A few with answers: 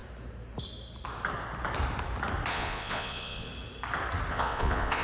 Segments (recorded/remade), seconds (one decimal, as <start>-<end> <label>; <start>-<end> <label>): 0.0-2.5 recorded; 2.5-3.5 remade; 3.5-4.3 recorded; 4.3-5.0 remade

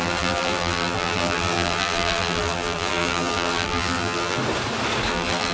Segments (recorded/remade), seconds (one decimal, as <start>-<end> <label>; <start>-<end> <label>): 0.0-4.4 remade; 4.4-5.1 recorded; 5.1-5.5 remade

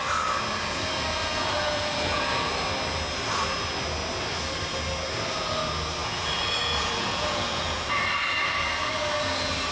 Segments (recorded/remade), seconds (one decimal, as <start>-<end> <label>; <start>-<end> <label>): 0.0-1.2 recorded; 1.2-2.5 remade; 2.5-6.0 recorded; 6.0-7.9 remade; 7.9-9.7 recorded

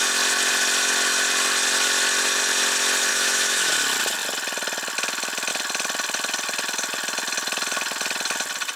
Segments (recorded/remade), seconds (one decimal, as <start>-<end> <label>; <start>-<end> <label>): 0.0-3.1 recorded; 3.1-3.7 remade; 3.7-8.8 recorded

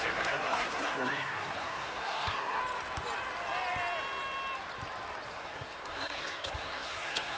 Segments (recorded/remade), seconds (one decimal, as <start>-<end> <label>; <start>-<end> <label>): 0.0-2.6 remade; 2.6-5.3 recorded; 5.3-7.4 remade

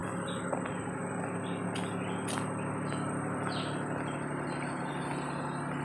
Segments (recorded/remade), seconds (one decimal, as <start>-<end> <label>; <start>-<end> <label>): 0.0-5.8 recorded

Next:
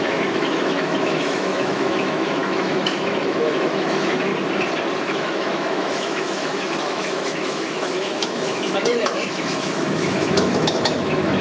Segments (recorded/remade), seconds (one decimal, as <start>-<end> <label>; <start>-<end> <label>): 0.0-4.3 remade; 4.3-5.0 recorded; 5.0-11.4 remade